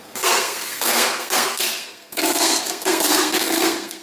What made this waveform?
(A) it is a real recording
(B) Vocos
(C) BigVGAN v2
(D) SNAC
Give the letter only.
D